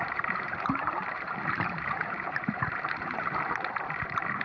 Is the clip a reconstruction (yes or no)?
yes